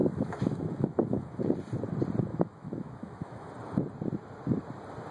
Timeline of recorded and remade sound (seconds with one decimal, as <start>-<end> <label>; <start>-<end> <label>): 0.0-1.5 remade; 1.5-2.3 recorded; 2.3-3.5 remade; 3.5-5.1 recorded

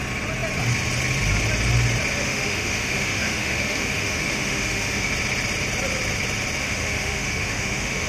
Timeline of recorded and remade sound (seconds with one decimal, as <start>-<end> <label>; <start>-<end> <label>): 0.0-2.2 recorded; 2.2-5.1 remade; 5.1-6.6 recorded; 6.6-8.1 remade

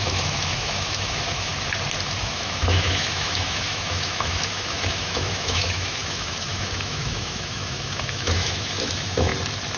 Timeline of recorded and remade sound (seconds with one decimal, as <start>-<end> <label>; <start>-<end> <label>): 0.0-1.5 remade; 1.5-2.2 recorded; 2.2-9.3 remade; 9.3-9.8 recorded

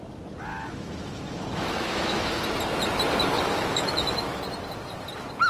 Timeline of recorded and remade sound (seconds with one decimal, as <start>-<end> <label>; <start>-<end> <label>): 0.0-0.5 recorded; 0.5-2.4 remade; 2.4-3.3 recorded; 3.3-4.4 remade; 4.4-5.5 recorded

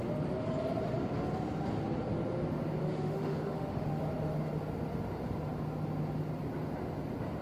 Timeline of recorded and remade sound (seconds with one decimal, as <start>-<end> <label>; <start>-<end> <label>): 0.0-2.8 recorded; 2.8-4.0 remade; 4.0-7.4 recorded

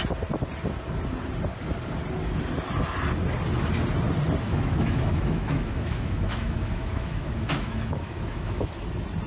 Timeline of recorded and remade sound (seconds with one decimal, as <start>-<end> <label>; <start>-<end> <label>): 0.0-4.5 recorded; 4.5-8.7 remade; 8.7-9.3 recorded

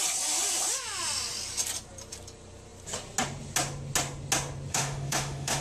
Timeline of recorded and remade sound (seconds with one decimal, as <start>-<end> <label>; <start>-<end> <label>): 0.0-4.7 recorded; 4.7-5.6 remade